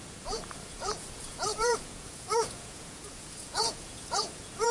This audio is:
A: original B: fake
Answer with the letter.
B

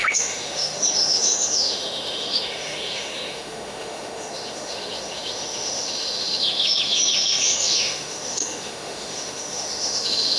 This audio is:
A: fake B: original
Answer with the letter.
A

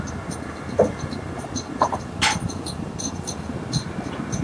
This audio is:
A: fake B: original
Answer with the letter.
B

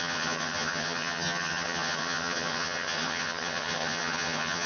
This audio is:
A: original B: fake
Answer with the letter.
B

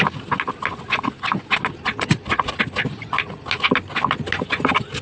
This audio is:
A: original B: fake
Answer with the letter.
A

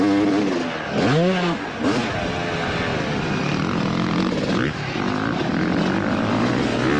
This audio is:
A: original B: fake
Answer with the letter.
A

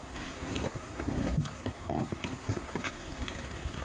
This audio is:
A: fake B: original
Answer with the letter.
A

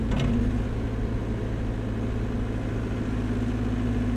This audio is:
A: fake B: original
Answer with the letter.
B